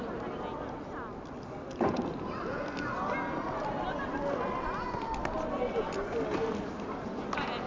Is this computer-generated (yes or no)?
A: no